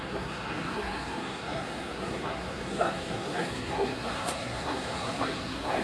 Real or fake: fake